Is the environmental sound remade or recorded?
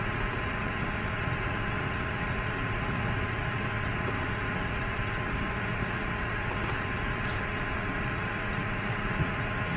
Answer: remade